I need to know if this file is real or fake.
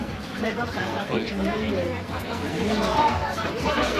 fake